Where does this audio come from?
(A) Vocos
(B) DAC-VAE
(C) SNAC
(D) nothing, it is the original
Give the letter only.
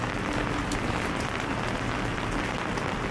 D